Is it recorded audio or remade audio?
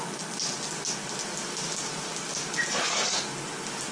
recorded